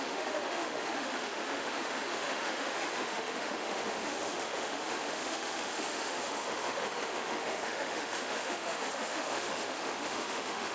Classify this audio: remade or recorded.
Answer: remade